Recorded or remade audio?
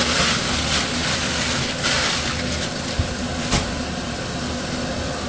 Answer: recorded